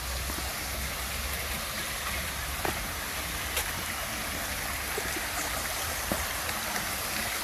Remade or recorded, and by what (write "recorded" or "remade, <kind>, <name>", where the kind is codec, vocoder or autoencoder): remade, vocoder, BigVGAN v2